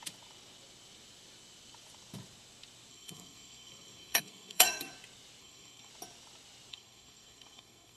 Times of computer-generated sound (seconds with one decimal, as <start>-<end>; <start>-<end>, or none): 2.9-4.9; 5.4-5.9; 6.7-8.0